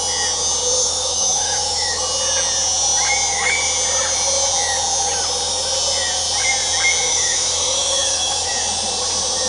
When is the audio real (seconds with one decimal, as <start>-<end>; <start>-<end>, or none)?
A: 0.0-0.8; 2.0-7.1; 8.5-9.5